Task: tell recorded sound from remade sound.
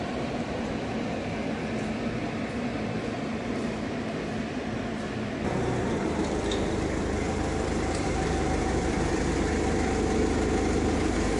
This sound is remade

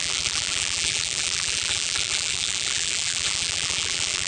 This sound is remade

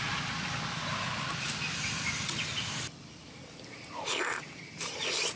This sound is remade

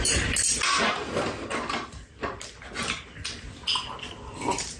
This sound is recorded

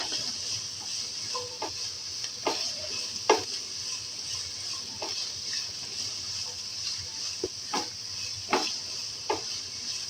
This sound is recorded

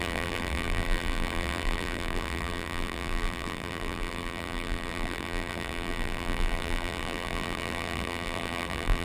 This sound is remade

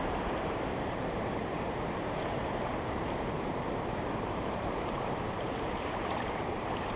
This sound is remade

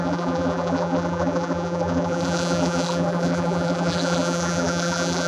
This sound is remade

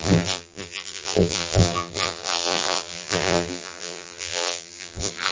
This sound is remade